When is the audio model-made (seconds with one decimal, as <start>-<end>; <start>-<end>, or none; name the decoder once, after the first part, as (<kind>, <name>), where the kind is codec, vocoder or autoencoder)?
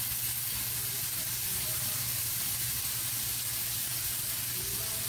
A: 1.5-2.8 (vocoder, BigVGAN v2)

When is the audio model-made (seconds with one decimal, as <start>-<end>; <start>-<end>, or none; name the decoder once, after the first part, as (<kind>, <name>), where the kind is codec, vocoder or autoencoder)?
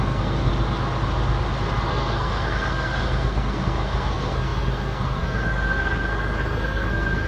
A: 0.0-0.5 (codec, SNAC); 1.9-7.3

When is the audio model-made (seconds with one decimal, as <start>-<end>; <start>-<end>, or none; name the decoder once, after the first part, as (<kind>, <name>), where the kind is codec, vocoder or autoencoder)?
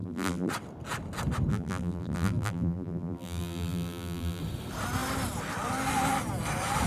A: 0.0-0.5 (vocoder, BigVGAN v2); 1.5-4.4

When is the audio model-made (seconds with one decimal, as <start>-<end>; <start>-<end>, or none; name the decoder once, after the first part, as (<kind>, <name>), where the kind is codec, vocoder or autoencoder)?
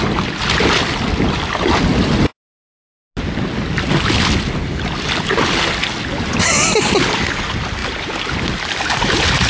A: none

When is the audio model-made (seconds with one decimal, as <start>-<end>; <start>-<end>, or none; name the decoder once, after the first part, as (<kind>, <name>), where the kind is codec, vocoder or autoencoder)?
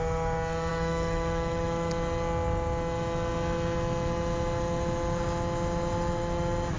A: 0.7-1.9 (autoencoder, DAC-VAE)